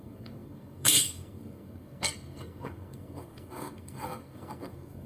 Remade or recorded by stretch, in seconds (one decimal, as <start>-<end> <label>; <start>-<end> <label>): 0.0-5.1 remade

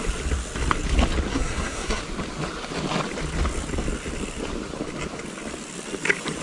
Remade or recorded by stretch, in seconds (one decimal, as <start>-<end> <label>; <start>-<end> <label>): 0.0-1.3 recorded; 1.3-2.0 remade; 2.0-6.4 recorded